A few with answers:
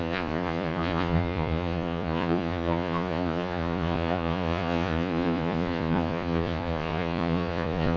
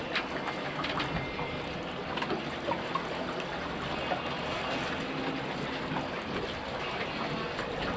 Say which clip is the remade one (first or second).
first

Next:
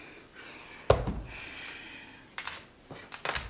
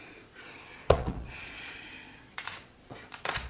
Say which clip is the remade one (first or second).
second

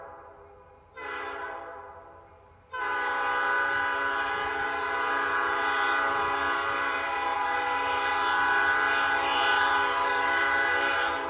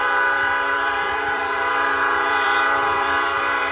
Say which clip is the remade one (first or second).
second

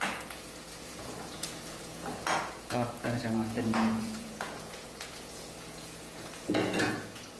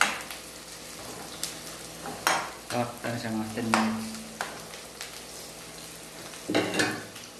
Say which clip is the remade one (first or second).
first